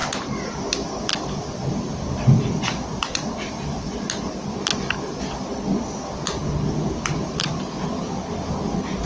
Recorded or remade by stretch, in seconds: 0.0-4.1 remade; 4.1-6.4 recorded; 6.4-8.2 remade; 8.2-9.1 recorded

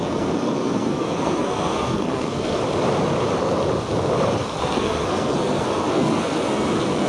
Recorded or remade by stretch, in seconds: 0.0-2.6 remade; 2.6-4.6 recorded; 4.6-7.1 remade

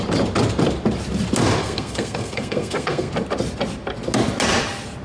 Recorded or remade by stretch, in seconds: 0.0-1.6 recorded; 1.6-3.1 remade; 3.1-5.0 recorded

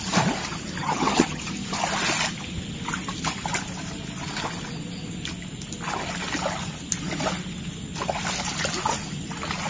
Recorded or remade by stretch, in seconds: 0.0-0.8 recorded; 0.8-1.4 remade; 1.4-9.7 recorded

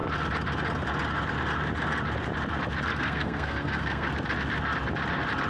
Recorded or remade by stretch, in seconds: 0.0-2.9 recorded; 2.9-4.1 remade; 4.1-5.5 recorded